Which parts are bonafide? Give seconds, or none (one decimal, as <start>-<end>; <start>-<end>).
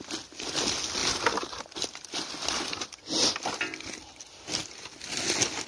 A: 0.0-5.7